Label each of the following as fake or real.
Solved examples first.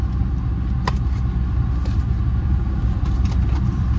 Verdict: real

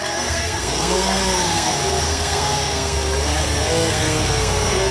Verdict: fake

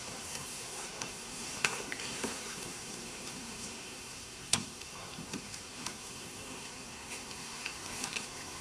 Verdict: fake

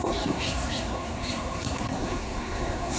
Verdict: fake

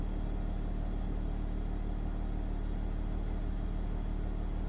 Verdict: real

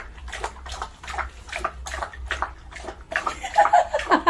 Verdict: real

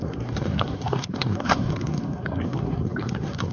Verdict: fake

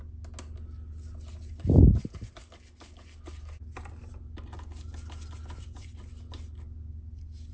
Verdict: real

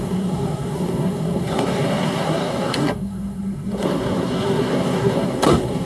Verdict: fake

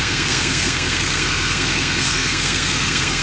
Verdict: fake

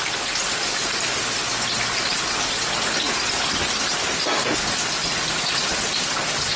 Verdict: real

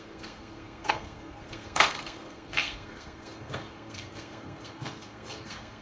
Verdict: fake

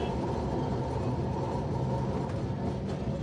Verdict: real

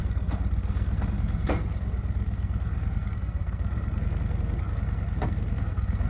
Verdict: fake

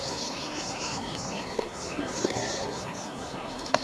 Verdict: fake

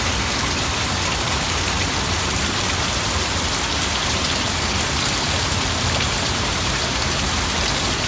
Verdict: real